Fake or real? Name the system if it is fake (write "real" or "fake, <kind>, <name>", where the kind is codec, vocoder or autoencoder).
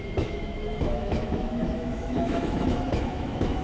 fake, autoencoder, DAC-VAE